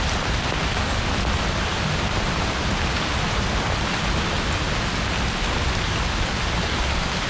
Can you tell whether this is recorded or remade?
recorded